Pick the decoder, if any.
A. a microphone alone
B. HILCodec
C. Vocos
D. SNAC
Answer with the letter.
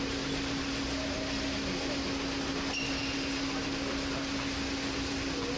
A